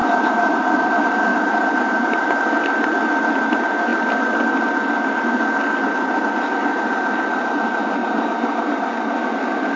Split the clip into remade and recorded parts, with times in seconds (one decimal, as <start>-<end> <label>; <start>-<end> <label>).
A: 0.0-0.7 remade; 0.7-1.3 recorded; 1.3-2.4 remade; 2.4-8.0 recorded; 8.0-8.7 remade; 8.7-9.8 recorded